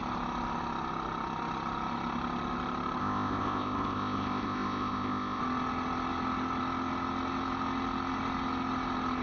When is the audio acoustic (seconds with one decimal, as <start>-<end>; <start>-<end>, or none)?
0.0-3.0; 5.4-9.2